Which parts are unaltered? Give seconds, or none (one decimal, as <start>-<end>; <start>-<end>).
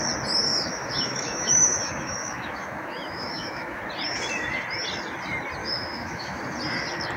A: 0.0-0.5; 3.8-5.6; 6.4-7.2